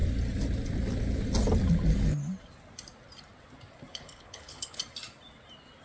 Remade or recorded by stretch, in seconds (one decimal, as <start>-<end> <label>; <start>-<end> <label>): 0.0-3.9 recorded; 3.9-4.8 remade; 4.8-5.8 recorded